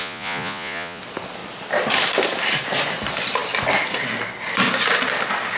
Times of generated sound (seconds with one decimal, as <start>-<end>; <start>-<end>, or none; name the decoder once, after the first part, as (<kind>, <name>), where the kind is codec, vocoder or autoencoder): 0.0-1.0 (vocoder, Vocos)